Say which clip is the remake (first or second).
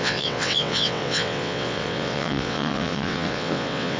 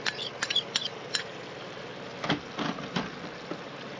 first